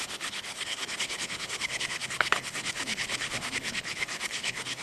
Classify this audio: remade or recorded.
remade